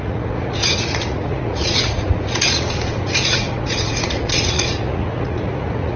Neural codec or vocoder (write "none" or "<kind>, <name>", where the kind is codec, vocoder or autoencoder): vocoder, Vocos